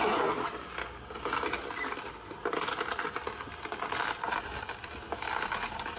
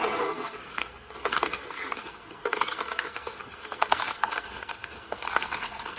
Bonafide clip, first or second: first